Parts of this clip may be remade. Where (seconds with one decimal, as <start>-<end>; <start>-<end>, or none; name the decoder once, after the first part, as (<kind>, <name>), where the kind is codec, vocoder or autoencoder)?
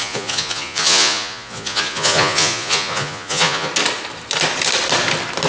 0.0-3.7 (vocoder, Vocos)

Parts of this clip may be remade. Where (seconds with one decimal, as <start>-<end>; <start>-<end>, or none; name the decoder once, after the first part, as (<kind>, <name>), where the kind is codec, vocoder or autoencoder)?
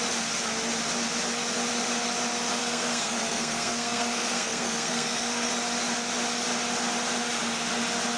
2.6-5.5 (codec, SNAC)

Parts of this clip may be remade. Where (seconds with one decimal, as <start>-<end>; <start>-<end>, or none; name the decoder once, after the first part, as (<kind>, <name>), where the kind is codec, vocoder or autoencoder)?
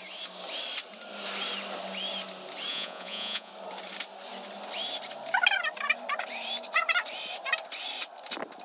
2.7-3.5 (vocoder, Vocos)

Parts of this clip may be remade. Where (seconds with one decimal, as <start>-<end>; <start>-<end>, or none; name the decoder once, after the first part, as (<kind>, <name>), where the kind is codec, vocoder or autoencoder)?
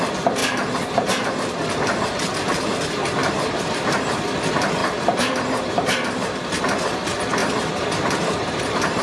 0.4-1.6 (vocoder, BigVGAN v2); 2.7-4.2; 4.8-6.6; 7.4-9.0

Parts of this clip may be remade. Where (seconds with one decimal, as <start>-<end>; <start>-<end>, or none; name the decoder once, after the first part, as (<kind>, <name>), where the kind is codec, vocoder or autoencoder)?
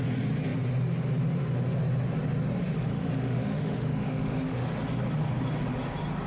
2.9-4.7 (autoencoder, DAC-VAE)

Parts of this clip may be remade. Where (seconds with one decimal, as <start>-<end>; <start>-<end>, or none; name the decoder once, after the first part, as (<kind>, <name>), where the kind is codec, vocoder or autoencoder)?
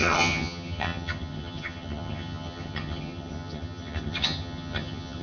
0.0-5.2 (vocoder, HiFi-GAN)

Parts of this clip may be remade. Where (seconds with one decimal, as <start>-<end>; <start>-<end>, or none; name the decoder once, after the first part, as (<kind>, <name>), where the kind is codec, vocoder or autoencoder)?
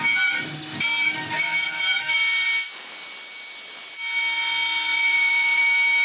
1.9-2.7 (vocoder, BigVGAN v2); 4.9-5.6